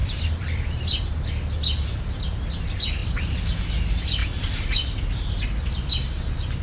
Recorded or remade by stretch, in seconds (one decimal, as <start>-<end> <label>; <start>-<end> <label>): 0.0-0.8 remade; 0.8-3.0 recorded; 3.0-3.6 remade; 3.6-4.2 recorded; 4.2-5.9 remade; 5.9-6.6 recorded